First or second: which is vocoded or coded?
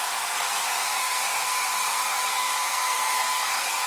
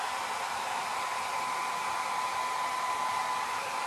first